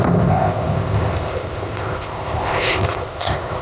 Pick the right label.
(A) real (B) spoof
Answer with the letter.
B